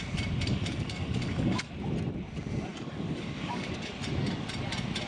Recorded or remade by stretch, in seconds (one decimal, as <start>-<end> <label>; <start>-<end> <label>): 0.0-0.5 recorded; 0.5-1.7 remade; 1.7-2.7 recorded; 2.7-3.9 remade; 3.9-5.1 recorded

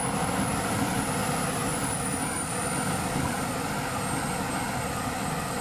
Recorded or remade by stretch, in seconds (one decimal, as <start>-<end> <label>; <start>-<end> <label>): 0.0-1.7 recorded; 1.7-3.5 remade; 3.5-5.6 recorded

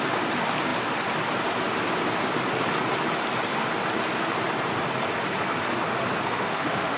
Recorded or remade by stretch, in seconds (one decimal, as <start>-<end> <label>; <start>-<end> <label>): 0.0-6.3 recorded; 6.3-7.0 remade

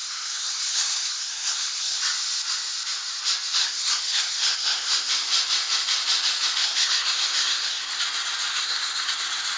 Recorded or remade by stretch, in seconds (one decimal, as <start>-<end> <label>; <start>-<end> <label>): 0.0-2.0 remade; 2.0-3.6 recorded; 3.6-5.1 remade; 5.1-6.6 recorded; 6.6-8.0 remade; 8.0-8.5 recorded; 8.5-9.1 remade; 9.1-9.6 recorded

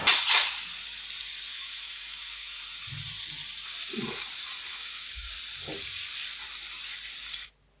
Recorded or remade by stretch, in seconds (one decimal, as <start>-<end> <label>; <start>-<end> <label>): 0.0-1.5 recorded; 1.5-2.6 remade; 2.6-4.7 recorded; 4.7-5.3 remade; 5.3-7.8 recorded